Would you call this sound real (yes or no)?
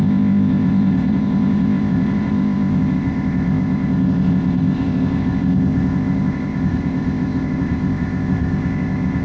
no